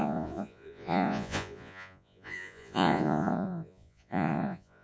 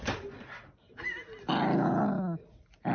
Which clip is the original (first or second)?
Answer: second